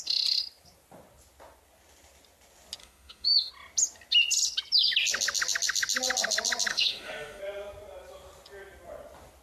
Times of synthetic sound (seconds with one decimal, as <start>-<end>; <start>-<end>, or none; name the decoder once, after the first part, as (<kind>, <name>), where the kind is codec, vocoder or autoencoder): 2.8-3.5 (autoencoder, DAC-VAE); 6.7-7.4